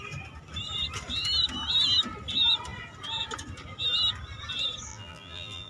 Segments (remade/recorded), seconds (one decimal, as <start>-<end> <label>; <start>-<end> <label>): 0.0-4.9 recorded; 4.9-5.7 remade